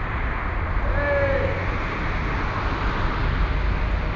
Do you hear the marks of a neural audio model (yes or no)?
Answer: no